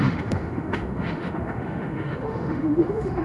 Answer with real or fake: fake